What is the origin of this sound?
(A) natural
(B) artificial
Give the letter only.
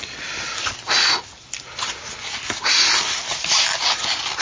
A